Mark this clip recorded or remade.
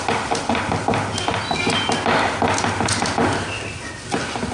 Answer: recorded